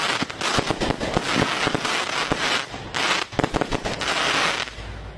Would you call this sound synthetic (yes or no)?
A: no